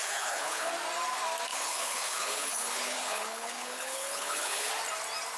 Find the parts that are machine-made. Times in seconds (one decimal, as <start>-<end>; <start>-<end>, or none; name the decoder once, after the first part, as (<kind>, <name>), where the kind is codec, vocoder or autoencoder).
0.0-0.7 (codec, HILCodec); 1.5-4.7